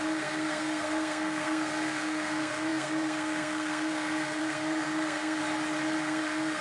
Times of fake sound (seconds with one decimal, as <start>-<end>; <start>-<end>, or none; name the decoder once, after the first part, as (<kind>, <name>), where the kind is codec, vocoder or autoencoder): 0.0-5.4 (codec, SNAC); 6.0-6.6